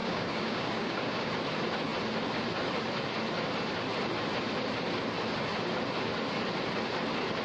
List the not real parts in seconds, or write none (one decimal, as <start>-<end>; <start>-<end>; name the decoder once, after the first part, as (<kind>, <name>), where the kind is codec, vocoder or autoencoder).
0.0-1.3 (codec, DAC)